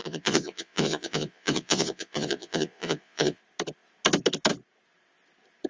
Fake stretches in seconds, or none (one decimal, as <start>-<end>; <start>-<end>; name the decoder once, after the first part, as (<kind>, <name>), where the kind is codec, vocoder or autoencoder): 0.0-3.4 (vocoder, Vocos)